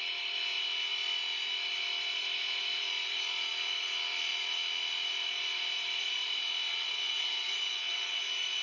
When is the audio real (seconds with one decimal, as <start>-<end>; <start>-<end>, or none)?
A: 0.0-6.7; 8.2-8.6